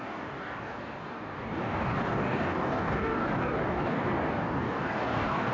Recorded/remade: remade